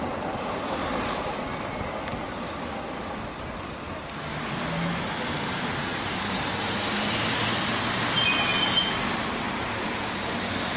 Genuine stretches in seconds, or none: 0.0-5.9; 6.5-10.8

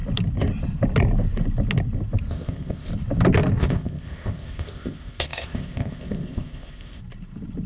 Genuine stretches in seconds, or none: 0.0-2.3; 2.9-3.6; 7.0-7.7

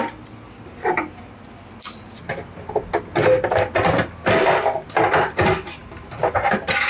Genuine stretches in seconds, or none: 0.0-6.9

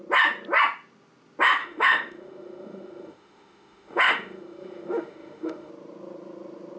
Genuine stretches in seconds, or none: 0.0-1.6; 5.7-6.8